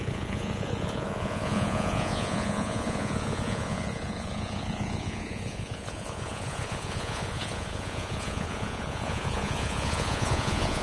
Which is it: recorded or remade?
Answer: remade